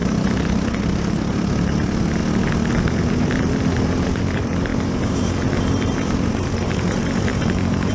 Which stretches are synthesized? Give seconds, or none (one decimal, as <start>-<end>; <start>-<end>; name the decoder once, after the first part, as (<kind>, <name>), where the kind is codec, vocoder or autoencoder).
0.0-2.2 (vocoder, BigVGAN v2); 2.9-7.9